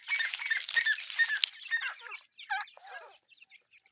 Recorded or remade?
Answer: recorded